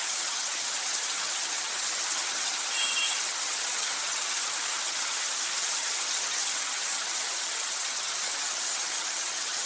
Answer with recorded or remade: remade